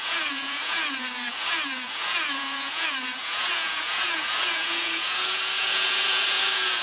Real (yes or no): no